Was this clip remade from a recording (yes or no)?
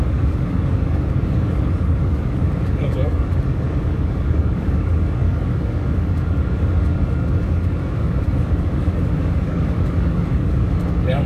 yes